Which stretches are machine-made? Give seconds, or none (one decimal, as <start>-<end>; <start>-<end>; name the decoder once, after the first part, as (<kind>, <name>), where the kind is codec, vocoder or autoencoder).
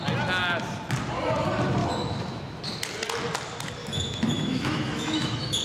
1.8-2.6 (autoencoder, DAC-VAE); 3.8-5.6